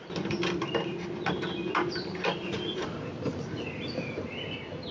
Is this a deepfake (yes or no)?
no